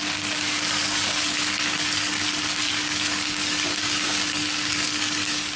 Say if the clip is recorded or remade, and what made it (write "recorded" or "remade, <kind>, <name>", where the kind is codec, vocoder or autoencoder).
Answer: remade, codec, DAC